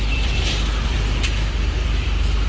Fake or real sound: fake